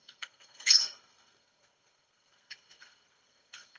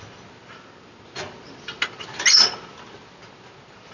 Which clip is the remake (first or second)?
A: first